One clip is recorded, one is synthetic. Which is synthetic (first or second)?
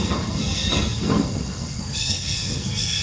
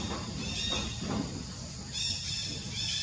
first